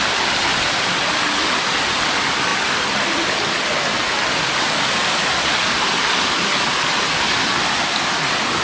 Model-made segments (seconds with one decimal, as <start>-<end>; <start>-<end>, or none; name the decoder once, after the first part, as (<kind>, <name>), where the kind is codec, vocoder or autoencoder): none